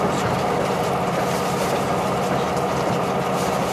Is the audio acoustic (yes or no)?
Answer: yes